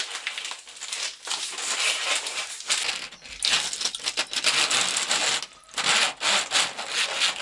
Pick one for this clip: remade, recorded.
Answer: recorded